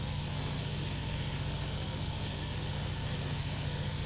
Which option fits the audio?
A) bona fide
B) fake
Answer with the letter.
B